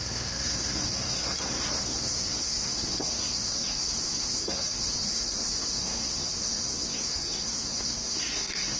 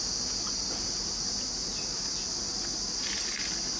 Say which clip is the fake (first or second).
first